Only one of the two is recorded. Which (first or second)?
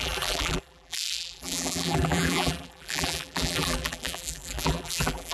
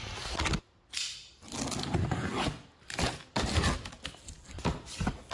second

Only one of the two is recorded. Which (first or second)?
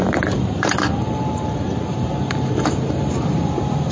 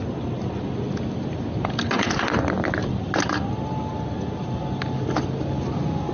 second